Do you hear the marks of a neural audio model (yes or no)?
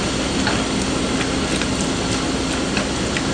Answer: no